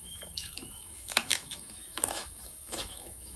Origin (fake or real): fake